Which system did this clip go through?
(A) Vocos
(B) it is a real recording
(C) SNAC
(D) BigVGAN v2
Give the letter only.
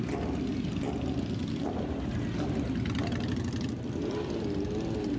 B